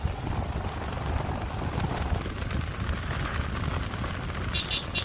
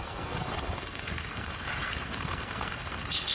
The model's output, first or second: second